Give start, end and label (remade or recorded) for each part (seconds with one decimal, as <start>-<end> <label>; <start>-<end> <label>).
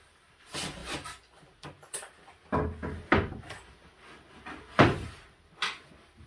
0.0-6.3 recorded